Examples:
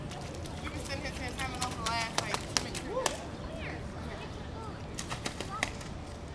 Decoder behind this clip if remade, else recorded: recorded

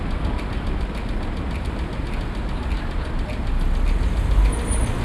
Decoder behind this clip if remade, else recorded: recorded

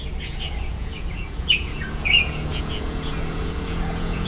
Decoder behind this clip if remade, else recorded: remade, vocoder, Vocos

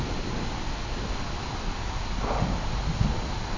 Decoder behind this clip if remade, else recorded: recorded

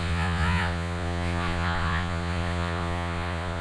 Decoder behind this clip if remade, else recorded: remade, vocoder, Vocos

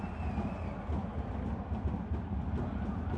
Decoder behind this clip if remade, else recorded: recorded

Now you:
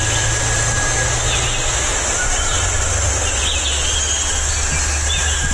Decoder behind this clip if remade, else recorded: recorded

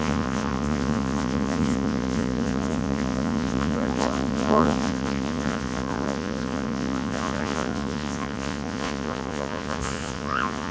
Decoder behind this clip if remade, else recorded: remade, vocoder, Vocos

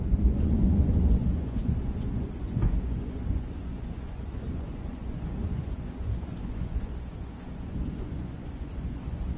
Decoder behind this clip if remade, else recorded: remade, vocoder, Vocos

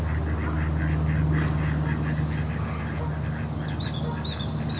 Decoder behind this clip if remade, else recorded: recorded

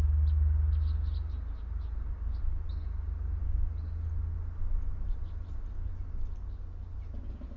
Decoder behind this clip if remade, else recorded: recorded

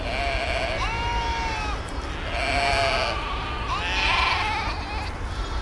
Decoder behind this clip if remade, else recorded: recorded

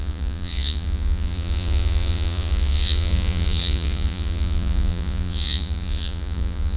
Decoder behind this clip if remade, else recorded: remade, vocoder, Vocos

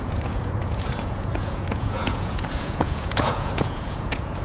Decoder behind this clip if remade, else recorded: remade, vocoder, Vocos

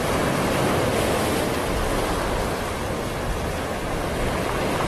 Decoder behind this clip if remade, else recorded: recorded